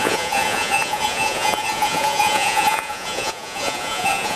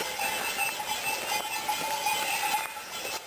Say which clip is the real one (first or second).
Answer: second